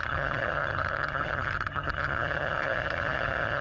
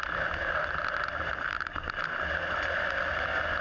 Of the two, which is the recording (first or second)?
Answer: second